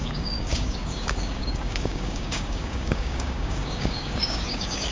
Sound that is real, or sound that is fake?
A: fake